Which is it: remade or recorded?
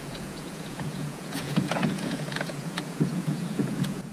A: remade